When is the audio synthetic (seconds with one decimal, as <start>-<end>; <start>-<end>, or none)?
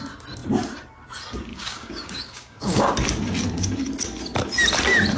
1.5-2.9